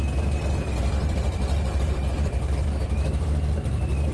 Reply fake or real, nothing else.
fake